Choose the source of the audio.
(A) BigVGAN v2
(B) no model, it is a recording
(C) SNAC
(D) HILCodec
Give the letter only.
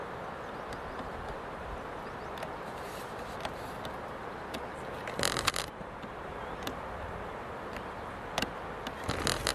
B